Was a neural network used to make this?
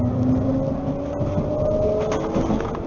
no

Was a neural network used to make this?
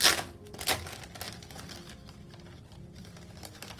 no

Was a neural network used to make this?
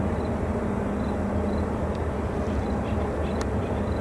no